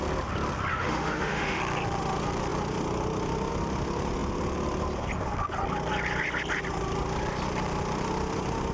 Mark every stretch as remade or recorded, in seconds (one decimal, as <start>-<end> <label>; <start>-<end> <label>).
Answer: 0.0-0.7 recorded; 0.7-1.6 remade; 1.6-8.7 recorded